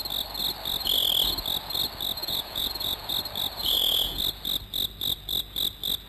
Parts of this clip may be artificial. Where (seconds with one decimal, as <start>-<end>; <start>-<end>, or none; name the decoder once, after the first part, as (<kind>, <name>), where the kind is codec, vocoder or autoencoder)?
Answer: 2.2-3.1 (vocoder, Vocos); 3.6-4.2